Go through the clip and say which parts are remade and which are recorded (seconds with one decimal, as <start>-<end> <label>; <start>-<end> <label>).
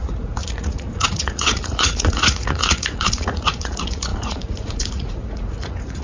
0.0-6.0 remade